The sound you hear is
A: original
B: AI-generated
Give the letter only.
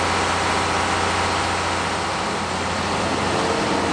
A